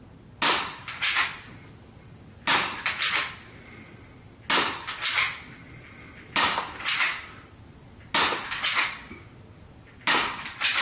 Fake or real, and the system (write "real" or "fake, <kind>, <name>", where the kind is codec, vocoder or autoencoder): real